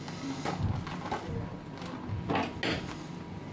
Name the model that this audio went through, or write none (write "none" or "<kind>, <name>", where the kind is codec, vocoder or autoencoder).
none